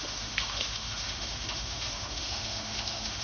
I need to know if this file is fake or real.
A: fake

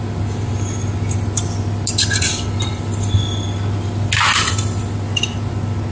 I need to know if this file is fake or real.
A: real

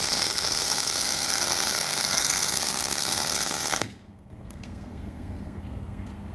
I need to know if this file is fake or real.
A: fake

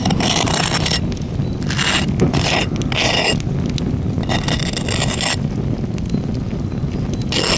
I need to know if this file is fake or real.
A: real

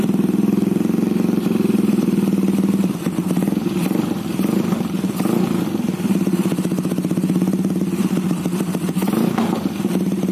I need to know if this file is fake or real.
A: fake